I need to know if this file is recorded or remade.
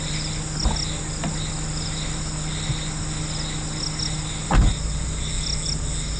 recorded